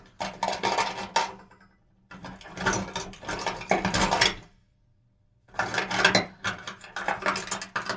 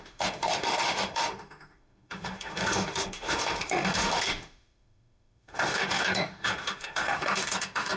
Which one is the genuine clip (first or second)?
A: first